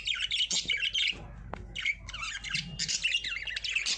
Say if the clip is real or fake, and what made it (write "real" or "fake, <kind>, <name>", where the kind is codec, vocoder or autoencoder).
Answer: real